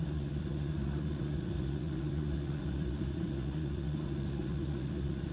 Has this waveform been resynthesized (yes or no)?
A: yes